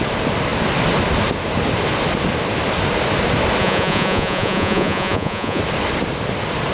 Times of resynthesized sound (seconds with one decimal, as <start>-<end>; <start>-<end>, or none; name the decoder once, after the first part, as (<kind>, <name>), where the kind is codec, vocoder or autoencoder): 3.6-5.6 (vocoder, Vocos)